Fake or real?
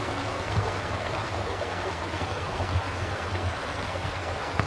fake